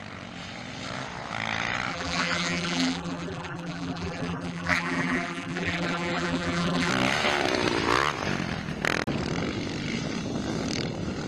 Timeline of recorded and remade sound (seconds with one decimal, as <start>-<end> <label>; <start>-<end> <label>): 0.0-1.9 recorded; 1.9-6.9 remade; 6.9-11.3 recorded